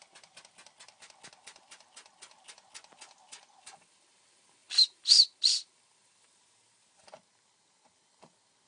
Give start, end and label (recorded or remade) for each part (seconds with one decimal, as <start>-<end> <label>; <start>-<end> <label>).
0.0-8.7 recorded